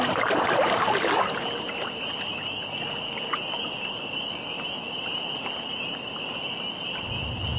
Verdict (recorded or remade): recorded